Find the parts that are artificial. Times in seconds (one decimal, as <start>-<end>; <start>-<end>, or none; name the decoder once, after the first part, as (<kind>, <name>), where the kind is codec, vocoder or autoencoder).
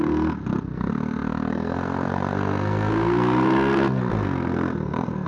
0.0-5.3 (codec, SNAC)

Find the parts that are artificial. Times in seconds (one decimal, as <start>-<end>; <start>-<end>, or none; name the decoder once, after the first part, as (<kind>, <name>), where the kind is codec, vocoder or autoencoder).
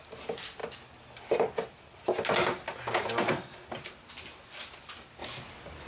none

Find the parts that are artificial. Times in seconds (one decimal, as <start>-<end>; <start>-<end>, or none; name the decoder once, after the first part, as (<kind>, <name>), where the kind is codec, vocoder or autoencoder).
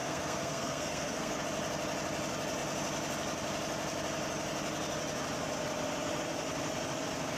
0.0-1.4 (codec, SNAC)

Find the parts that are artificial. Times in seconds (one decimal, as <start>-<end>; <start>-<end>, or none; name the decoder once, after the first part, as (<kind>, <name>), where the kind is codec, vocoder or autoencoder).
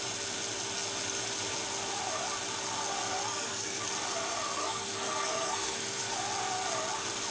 3.3-3.8 (codec, SNAC); 4.6-6.1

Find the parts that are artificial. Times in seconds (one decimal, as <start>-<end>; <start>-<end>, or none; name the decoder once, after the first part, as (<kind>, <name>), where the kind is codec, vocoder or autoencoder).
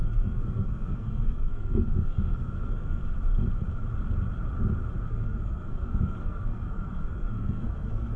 0.0-3.0 (codec, SNAC); 5.0-8.2